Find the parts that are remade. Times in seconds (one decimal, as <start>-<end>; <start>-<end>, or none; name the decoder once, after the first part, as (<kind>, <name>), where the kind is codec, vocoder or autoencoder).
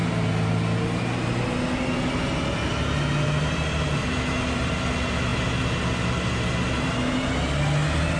none